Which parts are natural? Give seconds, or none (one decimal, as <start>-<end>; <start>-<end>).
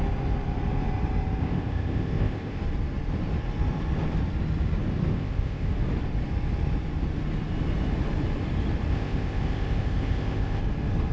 0.0-1.4; 2.6-5.1; 5.7-8.9; 10.6-11.1